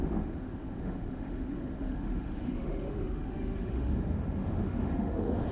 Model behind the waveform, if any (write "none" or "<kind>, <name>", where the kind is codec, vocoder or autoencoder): autoencoder, DAC-VAE